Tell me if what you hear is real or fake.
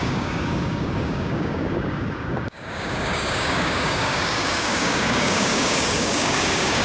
fake